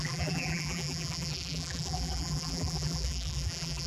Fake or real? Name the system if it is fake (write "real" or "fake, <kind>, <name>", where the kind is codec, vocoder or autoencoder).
fake, vocoder, BigVGAN v2